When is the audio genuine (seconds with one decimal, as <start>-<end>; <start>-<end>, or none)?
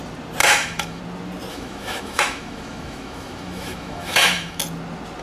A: 0.0-0.4; 1.0-1.5; 4.6-5.2